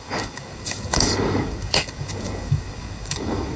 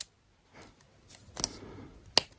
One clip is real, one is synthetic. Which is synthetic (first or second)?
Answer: first